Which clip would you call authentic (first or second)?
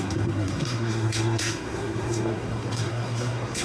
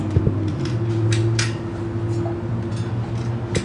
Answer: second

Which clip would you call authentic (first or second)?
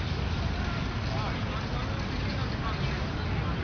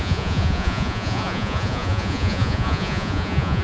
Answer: first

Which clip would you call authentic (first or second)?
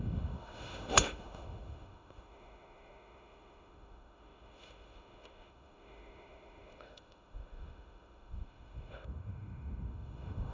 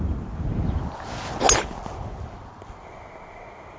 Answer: second